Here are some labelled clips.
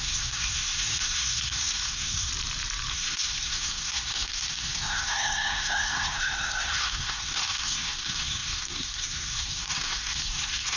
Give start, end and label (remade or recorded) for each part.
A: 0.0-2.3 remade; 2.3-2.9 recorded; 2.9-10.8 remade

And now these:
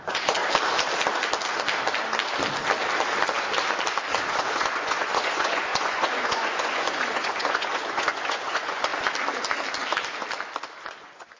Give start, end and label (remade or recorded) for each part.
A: 0.0-0.4 remade; 0.4-4.3 recorded; 4.3-8.9 remade; 8.9-10.9 recorded; 10.9-11.4 remade